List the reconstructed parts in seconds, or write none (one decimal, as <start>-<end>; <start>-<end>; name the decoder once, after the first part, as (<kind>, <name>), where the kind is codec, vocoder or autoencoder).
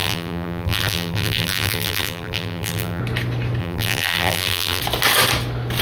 0.0-3.0 (vocoder, BigVGAN v2); 3.6-4.8